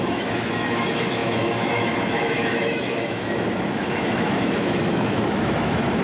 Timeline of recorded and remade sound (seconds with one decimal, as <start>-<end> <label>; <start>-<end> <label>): 0.0-6.0 remade

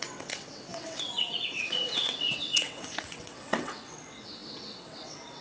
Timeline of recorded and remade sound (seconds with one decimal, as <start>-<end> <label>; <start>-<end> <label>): 0.0-5.4 remade